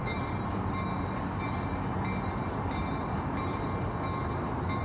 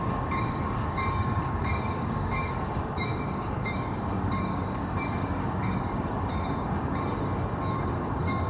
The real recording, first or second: first